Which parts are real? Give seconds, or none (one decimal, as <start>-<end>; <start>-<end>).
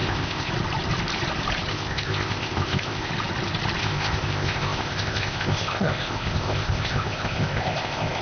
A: 0.5-1.7; 3.1-3.8